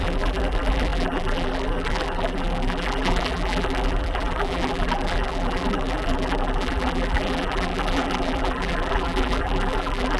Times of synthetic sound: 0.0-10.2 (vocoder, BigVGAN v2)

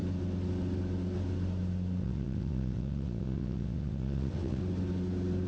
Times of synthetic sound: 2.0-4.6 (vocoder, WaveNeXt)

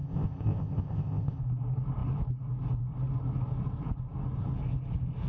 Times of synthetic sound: 0.0-1.4 (codec, ZipCodec)